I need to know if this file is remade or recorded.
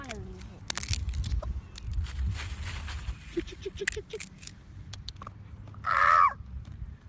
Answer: recorded